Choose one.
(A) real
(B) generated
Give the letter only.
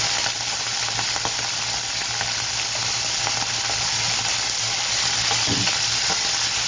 A